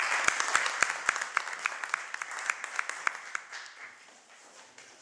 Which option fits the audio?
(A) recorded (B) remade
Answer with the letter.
A